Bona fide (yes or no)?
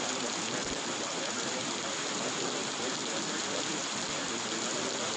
yes